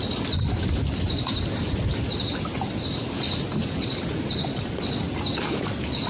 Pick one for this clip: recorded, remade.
recorded